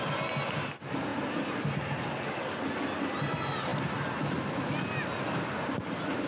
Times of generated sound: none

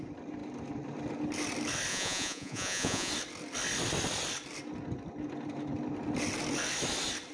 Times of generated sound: 1.9-3.1 (vocoder, Vocos)

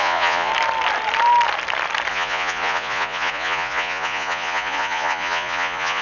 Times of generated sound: 0.0-0.5 (vocoder, Vocos); 2.1-6.0

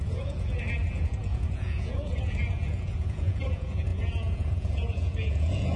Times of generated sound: 0.0-5.8 (vocoder, Vocos)

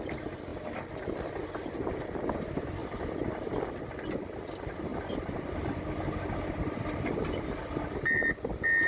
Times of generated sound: 2.8-3.7 (vocoder, BigVGAN v2); 4.9-8.2

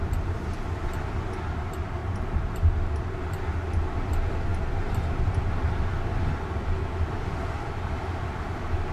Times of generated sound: 2.0-3.2 (vocoder, BigVGAN v2)

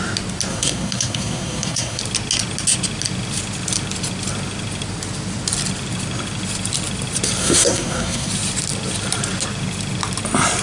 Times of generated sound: 0.5-2.0 (codec, SNAC); 7.4-8.3

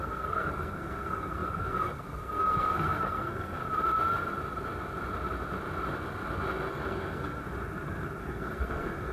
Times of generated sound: 0.0-3.6 (codec, SNAC); 6.7-7.4; 8.2-9.1